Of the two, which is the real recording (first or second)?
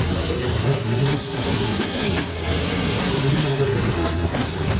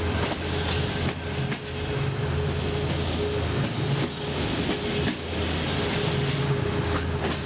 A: second